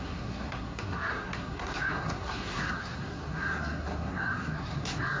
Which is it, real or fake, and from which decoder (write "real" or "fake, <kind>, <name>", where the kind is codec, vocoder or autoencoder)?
fake, codec, SNAC